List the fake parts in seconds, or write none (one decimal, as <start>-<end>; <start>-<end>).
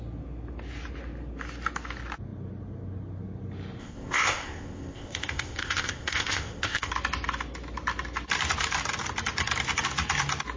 3.8-6.9